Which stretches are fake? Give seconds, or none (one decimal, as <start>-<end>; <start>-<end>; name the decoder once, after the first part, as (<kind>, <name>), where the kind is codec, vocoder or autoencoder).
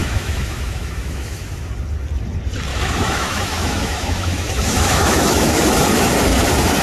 0.0-1.7 (autoencoder, DAC-VAE); 2.7-5.6